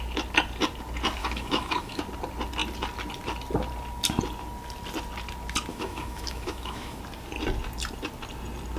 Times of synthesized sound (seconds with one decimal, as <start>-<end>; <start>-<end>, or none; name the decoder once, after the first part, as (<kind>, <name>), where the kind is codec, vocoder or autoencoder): 1.2-2.0 (autoencoder, DAC-VAE); 5.7-7.0